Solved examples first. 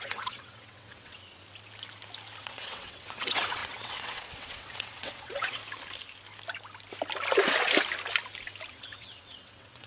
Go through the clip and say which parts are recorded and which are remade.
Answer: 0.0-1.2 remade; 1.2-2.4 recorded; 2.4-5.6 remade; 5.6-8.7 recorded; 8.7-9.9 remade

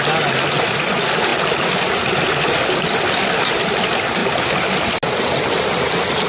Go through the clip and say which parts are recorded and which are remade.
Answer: 0.0-6.3 recorded

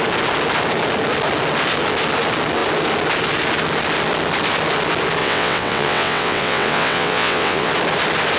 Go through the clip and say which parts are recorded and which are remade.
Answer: 0.0-5.2 recorded; 5.2-7.7 remade; 7.7-8.4 recorded

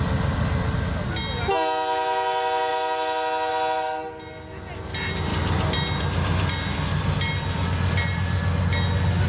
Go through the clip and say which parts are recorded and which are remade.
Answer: 0.0-9.3 recorded